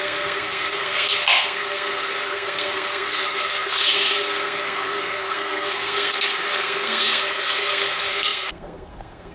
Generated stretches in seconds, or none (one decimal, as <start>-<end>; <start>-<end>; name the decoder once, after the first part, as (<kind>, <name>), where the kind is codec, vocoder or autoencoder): 0.0-9.3 (codec, SNAC)